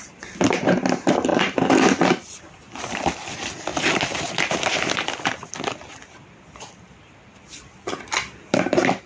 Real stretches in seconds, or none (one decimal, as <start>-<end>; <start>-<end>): none